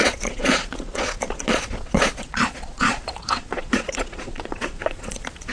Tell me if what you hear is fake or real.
fake